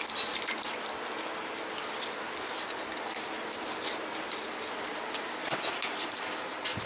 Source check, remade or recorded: recorded